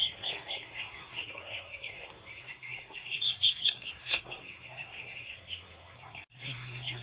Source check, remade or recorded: remade